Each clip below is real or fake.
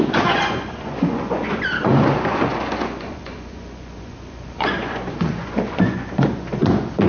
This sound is fake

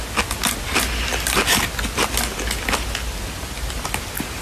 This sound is real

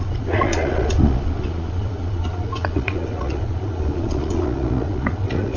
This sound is fake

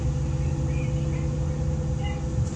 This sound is real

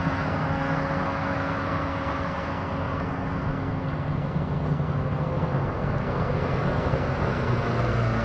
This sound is fake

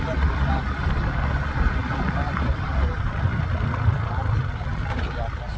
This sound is real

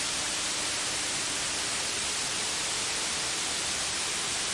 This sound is real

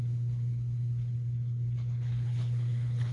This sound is fake